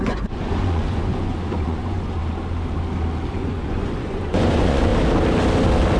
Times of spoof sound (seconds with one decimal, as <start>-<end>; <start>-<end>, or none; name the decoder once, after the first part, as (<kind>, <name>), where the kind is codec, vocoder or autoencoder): 0.0-2.2 (vocoder, Vocos); 3.3-4.9